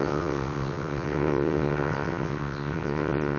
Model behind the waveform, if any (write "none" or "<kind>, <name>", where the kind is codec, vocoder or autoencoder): vocoder, WaveNeXt